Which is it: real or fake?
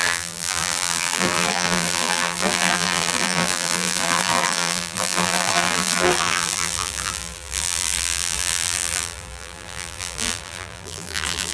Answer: fake